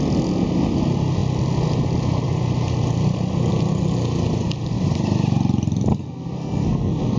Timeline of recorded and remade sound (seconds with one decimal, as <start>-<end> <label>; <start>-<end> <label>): 0.0-5.9 recorded; 5.9-7.2 remade